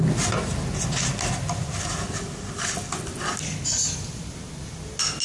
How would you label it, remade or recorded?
recorded